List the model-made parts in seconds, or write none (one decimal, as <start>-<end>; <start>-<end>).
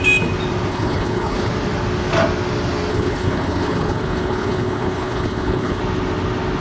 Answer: 0.7-1.5; 2.9-5.8